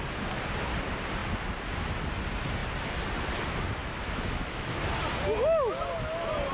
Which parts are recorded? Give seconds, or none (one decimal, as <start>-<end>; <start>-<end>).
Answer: 0.0-3.8; 4.8-6.5